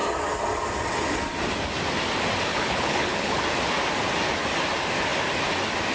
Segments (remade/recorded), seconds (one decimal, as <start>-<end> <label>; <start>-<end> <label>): 0.0-2.5 recorded; 2.5-3.4 remade; 3.4-5.9 recorded